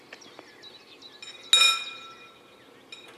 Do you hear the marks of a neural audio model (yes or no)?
no